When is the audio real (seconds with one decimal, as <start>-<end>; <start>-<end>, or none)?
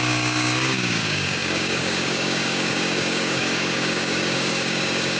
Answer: none